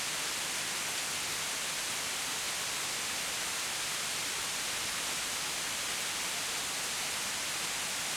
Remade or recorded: recorded